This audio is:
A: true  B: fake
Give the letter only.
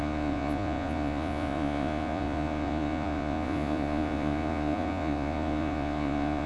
B